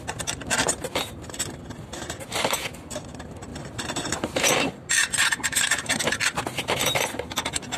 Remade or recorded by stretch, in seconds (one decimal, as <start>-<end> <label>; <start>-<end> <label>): 0.0-3.5 recorded; 3.5-4.5 remade; 4.5-5.2 recorded; 5.2-6.0 remade; 6.0-7.8 recorded